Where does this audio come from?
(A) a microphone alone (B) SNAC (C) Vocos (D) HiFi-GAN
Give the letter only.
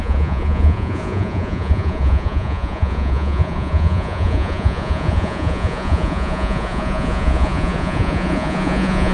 C